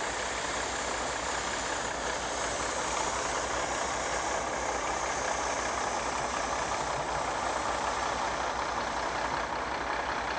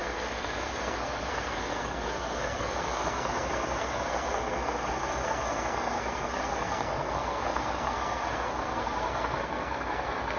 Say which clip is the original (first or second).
first